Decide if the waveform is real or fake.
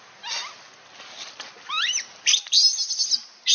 real